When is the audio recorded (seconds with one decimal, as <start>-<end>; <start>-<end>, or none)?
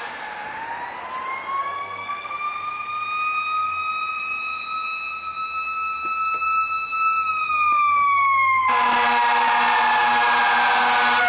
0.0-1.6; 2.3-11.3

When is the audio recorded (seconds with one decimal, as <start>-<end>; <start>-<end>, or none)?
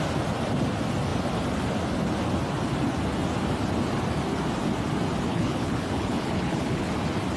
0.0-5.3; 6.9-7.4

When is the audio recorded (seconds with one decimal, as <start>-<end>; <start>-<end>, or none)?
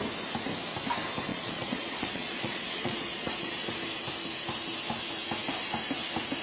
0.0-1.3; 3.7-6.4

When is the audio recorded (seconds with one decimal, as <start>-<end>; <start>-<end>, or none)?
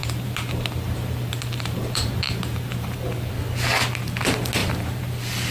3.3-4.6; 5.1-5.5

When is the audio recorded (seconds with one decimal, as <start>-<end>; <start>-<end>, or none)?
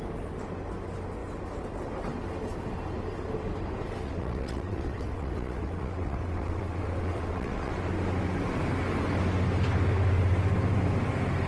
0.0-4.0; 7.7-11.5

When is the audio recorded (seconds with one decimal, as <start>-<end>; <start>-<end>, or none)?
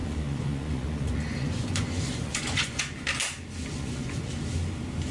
2.8-3.7; 4.3-5.1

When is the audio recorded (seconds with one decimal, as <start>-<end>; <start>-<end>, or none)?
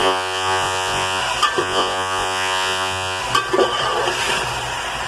1.2-1.6; 3.2-5.1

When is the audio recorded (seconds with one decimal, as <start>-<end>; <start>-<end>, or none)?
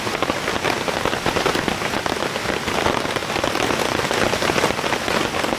0.0-5.6